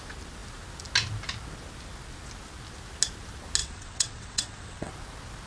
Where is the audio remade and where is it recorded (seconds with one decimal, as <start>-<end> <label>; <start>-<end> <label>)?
0.0-3.6 recorded; 3.6-4.9 remade; 4.9-5.5 recorded